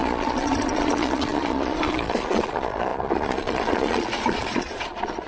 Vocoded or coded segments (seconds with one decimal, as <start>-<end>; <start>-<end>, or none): 0.0-5.3